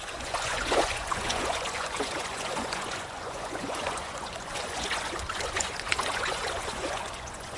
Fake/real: fake